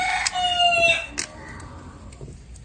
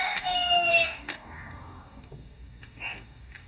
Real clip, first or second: first